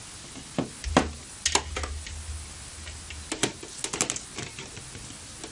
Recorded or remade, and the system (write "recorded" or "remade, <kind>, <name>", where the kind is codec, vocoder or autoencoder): recorded